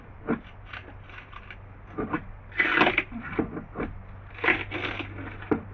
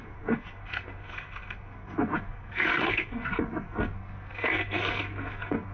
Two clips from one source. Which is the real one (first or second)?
first